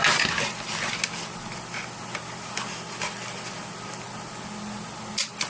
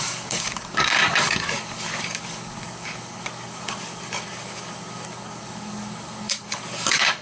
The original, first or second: first